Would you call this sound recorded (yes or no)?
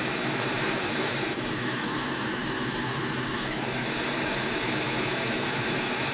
no